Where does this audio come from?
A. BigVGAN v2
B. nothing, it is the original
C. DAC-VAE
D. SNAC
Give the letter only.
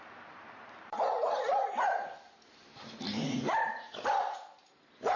A